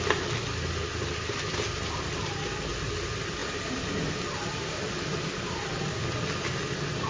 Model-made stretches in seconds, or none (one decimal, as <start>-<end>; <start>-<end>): none